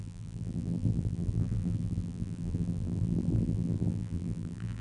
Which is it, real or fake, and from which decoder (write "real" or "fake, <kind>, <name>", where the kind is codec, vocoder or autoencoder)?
fake, vocoder, BigVGAN v2